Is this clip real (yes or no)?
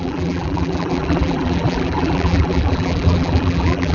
no